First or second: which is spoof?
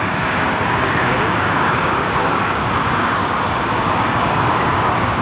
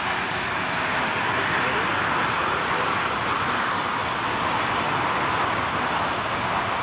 first